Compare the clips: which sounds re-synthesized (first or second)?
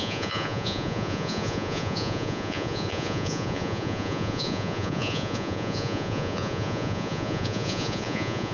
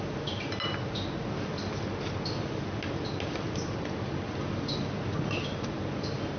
first